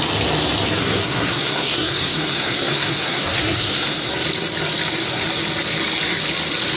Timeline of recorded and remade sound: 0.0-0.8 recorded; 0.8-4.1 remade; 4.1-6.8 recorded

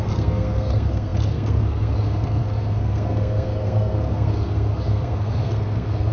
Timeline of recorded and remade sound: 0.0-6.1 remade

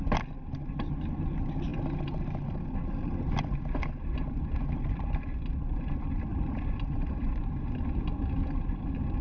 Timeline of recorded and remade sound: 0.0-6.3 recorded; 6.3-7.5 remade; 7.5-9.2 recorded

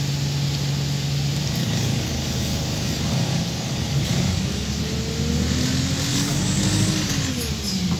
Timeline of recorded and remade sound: 0.0-1.6 recorded; 1.6-4.8 remade; 4.8-6.1 recorded; 6.1-7.5 remade; 7.5-8.0 recorded

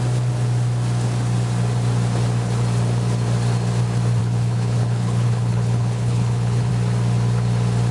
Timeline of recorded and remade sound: 0.0-4.2 recorded; 4.2-6.7 remade; 6.7-7.9 recorded

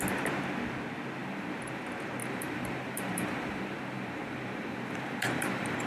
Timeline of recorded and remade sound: 0.0-1.2 recorded; 1.2-1.8 remade; 1.8-2.2 recorded; 2.2-5.9 remade

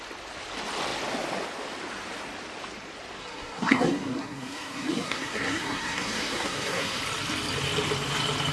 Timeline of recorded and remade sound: 0.0-3.2 recorded; 3.2-7.0 remade; 7.0-8.5 recorded

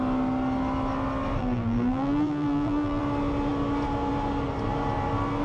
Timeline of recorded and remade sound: 0.0-1.4 recorded; 1.4-3.0 remade; 3.0-5.4 recorded